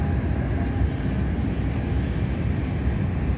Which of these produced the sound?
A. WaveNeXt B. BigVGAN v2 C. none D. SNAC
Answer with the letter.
C